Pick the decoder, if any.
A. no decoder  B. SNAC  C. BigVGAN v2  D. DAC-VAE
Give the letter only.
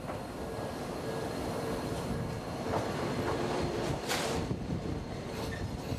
C